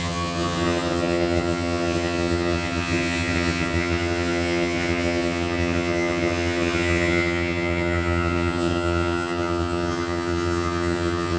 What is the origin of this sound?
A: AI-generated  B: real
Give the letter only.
A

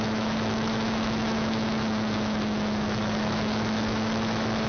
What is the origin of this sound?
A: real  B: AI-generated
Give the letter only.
B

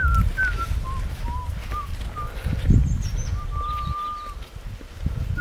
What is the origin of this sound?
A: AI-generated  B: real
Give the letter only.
B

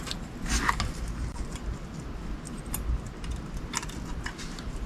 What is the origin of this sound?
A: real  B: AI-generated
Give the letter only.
A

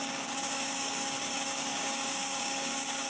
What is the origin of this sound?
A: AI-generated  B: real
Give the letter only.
A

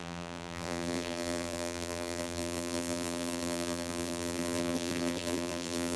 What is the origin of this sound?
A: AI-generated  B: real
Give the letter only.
A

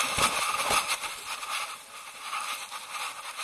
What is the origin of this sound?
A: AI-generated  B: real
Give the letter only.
B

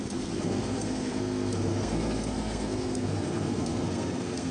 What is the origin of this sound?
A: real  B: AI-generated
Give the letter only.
B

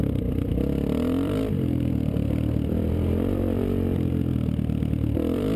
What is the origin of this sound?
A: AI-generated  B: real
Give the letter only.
A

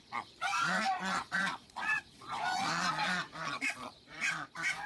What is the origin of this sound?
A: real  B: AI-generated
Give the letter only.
B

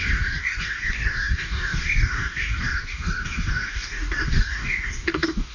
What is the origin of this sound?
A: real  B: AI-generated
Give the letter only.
B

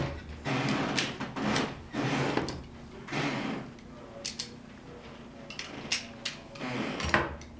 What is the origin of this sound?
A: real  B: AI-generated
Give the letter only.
A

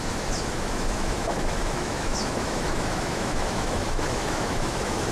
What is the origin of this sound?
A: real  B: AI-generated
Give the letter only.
B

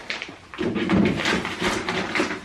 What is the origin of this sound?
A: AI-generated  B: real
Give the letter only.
A